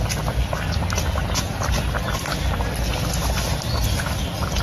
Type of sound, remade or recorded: recorded